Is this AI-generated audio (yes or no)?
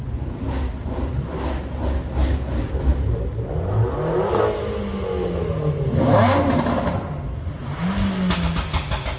no